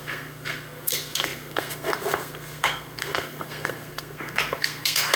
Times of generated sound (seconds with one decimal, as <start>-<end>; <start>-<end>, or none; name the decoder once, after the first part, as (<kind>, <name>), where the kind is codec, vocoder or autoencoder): 0.0-5.2 (codec, SNAC)